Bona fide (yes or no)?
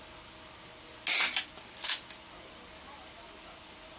yes